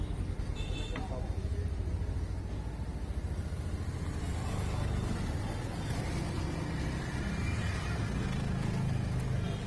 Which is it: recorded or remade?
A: recorded